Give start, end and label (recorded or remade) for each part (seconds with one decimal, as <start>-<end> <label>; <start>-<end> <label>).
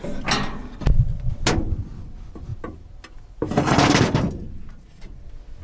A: 0.0-5.6 recorded